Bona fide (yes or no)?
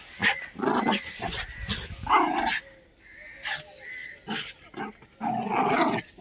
yes